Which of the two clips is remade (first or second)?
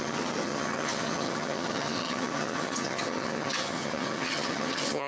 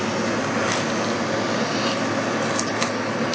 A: first